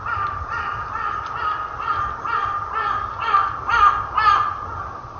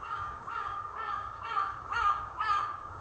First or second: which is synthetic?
second